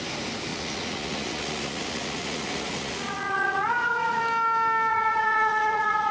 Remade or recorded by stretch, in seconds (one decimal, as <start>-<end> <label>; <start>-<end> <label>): 0.0-0.5 recorded; 0.5-4.2 remade; 4.2-4.9 recorded; 4.9-6.1 remade